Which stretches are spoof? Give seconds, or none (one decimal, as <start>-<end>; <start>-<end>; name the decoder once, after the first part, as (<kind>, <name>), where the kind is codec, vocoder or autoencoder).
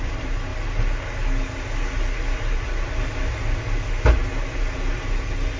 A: none